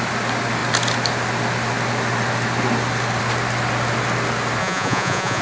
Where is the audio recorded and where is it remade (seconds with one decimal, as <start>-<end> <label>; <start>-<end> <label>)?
0.0-4.6 recorded; 4.6-5.4 remade